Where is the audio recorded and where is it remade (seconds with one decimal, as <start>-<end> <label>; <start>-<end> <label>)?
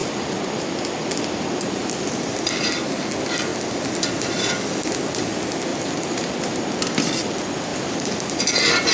0.0-3.1 remade; 3.1-3.5 recorded; 3.5-4.7 remade; 4.7-5.7 recorded; 5.7-6.8 remade; 6.8-7.7 recorded; 7.7-8.4 remade; 8.4-8.9 recorded